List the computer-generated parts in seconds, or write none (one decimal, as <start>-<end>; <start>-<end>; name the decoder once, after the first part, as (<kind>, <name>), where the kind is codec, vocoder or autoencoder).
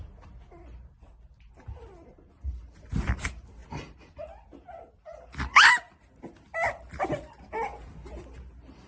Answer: none